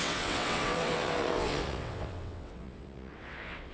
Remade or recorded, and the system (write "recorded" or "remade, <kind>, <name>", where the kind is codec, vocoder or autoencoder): remade, vocoder, WaveNeXt